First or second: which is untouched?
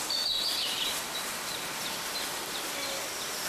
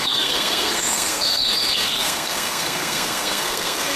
first